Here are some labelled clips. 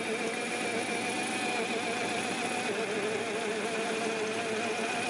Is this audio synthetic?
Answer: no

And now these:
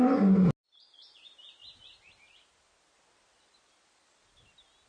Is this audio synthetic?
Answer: no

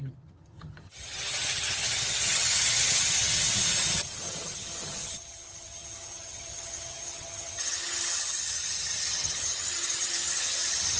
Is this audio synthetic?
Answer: yes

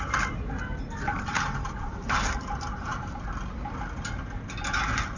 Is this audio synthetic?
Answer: no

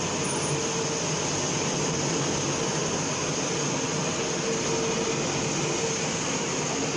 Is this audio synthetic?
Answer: no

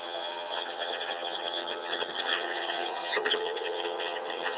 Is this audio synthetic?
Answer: yes